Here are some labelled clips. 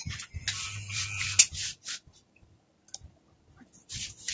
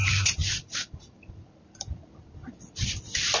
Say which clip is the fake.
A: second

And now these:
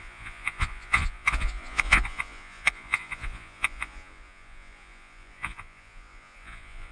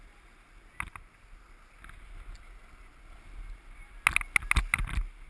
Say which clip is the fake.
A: first